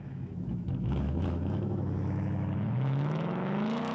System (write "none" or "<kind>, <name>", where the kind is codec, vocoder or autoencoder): autoencoder, DAC-VAE